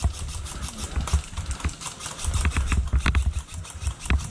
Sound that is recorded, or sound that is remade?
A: recorded